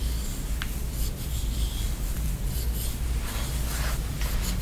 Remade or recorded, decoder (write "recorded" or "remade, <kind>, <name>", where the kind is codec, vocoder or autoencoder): recorded